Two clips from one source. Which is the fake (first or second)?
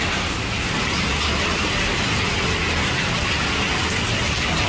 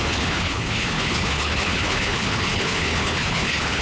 second